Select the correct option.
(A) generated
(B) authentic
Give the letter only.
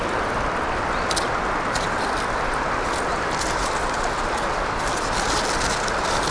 B